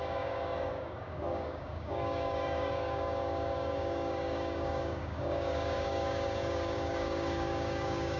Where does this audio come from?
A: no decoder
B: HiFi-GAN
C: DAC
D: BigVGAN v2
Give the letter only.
C